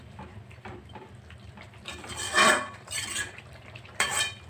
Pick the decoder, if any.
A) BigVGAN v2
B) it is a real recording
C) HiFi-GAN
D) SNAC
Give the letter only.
A